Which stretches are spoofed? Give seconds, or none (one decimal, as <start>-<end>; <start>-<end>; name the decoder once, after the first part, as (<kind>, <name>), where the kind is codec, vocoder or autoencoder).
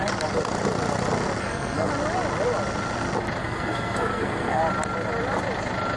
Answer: 1.4-1.9 (codec, SNAC); 3.4-4.6